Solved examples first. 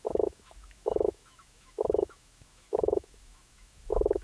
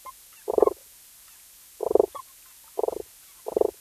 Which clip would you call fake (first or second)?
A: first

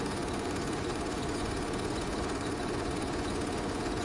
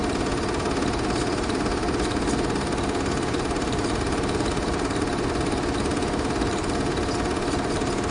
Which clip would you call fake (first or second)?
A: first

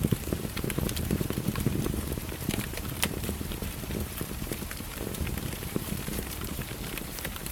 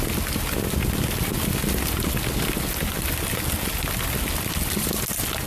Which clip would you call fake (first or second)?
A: first